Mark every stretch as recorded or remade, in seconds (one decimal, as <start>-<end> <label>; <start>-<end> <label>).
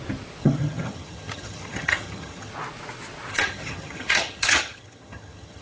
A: 0.0-0.4 recorded; 0.4-2.5 remade; 2.5-3.3 recorded; 3.3-5.6 remade